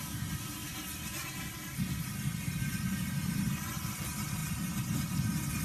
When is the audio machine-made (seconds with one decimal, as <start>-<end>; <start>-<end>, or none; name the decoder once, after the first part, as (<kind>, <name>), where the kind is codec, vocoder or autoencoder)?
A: 0.6-4.0 (vocoder, BigVGAN v2)